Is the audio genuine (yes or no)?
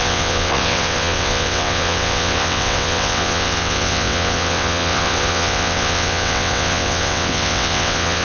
no